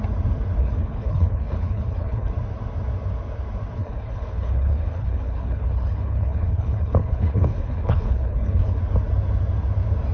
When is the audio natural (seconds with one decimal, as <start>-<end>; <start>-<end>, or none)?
0.0-0.6; 2.3-3.8; 8.8-10.1